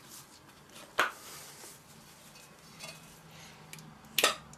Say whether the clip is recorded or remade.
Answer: recorded